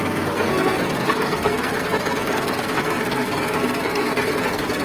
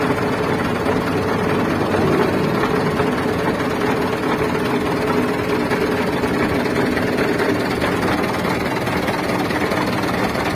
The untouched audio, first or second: second